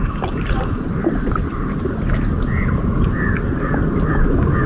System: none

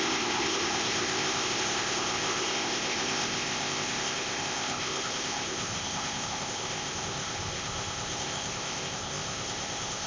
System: codec, ZipCodec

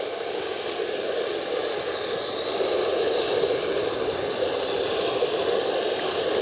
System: none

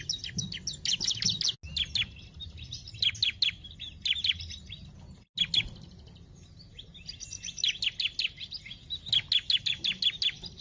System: none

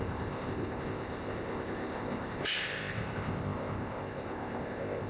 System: codec, ZipCodec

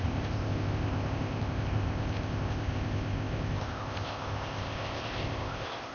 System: codec, ZipCodec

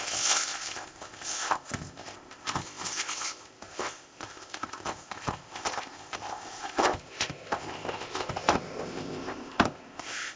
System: codec, ZipCodec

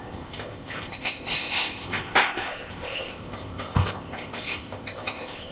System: codec, ZipCodec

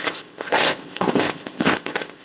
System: codec, ZipCodec